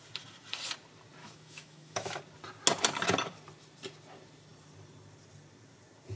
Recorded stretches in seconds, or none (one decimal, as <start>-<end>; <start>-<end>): 0.0-1.2; 2.2-6.2